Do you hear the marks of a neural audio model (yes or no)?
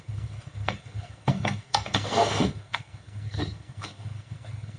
yes